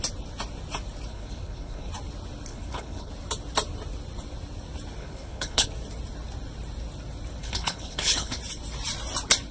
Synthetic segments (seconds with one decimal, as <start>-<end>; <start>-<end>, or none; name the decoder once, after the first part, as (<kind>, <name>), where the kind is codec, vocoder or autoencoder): 1.1-1.9 (codec, HILCodec); 2.5-3.1; 5.0-5.7; 7.4-8.4